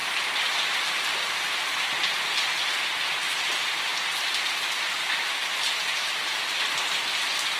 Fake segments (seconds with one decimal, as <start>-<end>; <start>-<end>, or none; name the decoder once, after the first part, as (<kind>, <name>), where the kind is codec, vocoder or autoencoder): none